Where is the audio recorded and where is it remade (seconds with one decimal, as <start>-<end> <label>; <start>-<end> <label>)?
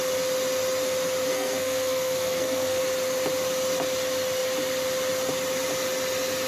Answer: 0.0-1.3 recorded; 1.3-2.8 remade; 2.8-6.5 recorded